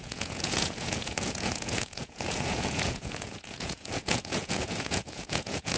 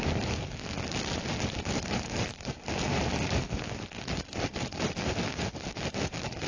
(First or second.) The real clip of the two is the second